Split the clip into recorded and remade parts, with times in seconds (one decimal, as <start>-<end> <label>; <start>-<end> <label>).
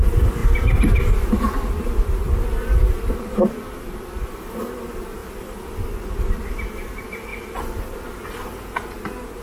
0.0-0.4 recorded; 0.4-4.5 remade; 4.5-5.2 recorded; 5.2-6.5 remade; 6.5-7.3 recorded; 7.3-7.8 remade; 7.8-9.4 recorded